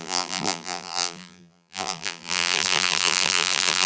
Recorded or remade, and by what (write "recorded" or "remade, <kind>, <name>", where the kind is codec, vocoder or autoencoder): remade, vocoder, BigVGAN v2